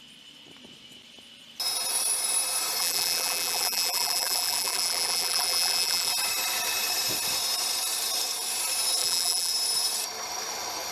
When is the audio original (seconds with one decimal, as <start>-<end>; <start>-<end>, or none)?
0.0-2.8; 6.1-9.0; 9.5-10.9